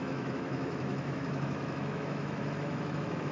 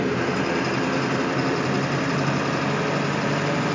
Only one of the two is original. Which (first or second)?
second